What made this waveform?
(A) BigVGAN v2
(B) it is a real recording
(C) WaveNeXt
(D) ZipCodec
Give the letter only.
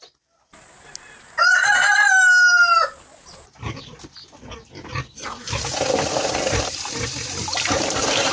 B